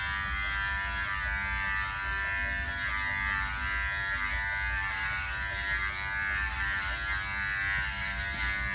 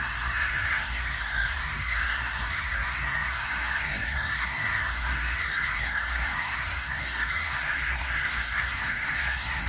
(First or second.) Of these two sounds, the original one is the first